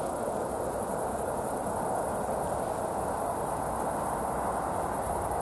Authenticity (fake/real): real